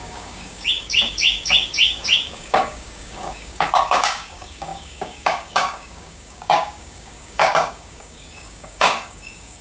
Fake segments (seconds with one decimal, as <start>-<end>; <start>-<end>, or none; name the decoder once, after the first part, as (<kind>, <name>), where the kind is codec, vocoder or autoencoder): 0.0-9.6 (codec, DAC)